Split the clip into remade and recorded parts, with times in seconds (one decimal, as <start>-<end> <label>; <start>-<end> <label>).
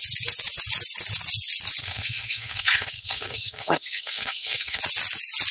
0.0-1.8 recorded; 1.8-4.8 remade; 4.8-5.5 recorded